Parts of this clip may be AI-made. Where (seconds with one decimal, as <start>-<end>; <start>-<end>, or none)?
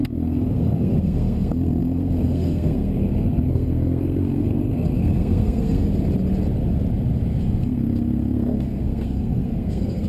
0.0-5.8; 7.4-10.1